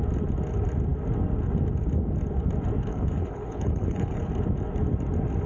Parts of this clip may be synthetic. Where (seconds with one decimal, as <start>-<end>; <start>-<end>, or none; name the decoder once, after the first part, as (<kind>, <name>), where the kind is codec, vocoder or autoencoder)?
2.9-4.3 (codec, HILCodec)